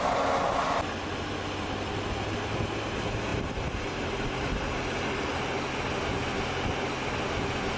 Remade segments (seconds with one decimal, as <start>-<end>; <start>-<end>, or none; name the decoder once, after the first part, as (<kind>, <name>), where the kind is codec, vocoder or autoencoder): none